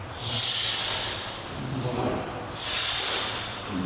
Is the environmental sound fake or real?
fake